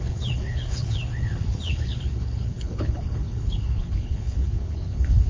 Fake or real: fake